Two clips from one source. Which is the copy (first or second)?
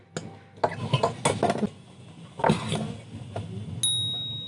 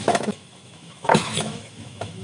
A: second